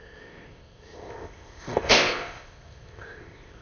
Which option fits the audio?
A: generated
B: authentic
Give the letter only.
A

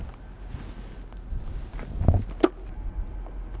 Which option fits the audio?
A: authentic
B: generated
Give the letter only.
A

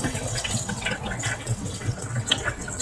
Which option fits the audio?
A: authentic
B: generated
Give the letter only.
B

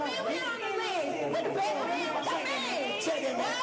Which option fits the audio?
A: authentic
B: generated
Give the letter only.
A